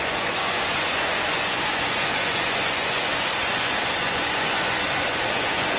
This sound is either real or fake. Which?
fake